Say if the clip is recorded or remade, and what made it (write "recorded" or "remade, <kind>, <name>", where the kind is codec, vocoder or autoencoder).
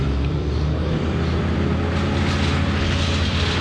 remade, vocoder, BigVGAN v2